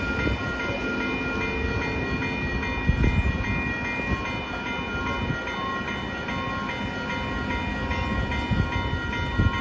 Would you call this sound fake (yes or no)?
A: no